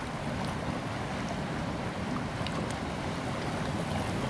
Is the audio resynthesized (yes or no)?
no